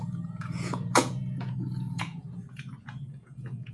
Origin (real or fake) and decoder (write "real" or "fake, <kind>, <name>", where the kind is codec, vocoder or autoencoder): fake, vocoder, Vocos